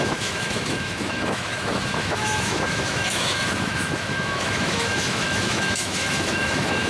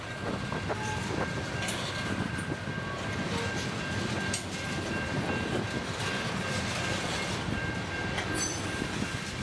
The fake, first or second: first